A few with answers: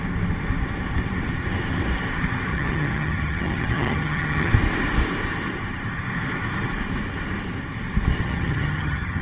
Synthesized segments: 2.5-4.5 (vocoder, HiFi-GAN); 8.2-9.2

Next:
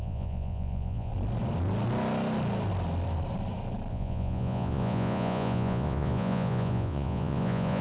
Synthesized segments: 0.0-1.1 (vocoder, Vocos); 3.9-7.8

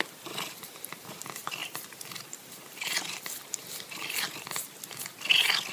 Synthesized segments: none

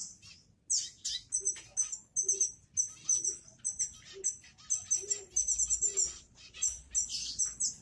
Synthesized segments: 3.0-3.6 (vocoder, Vocos); 6.0-6.9

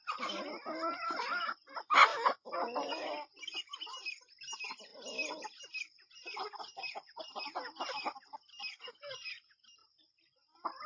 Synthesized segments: none

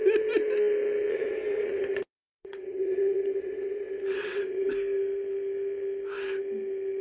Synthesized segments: 1.1-4.7 (vocoder, WaveNeXt)

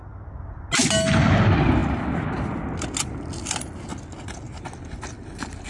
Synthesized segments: none

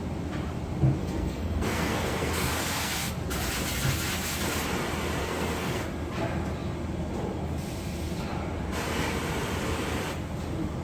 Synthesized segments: 1.0-3.1 (codec, SNAC); 5.2-5.8